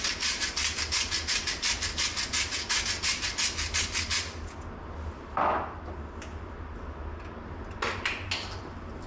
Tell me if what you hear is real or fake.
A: real